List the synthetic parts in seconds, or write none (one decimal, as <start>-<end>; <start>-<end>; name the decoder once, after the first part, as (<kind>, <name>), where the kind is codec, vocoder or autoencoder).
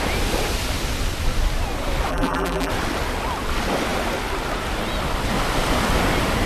2.1-2.7 (vocoder, BigVGAN v2)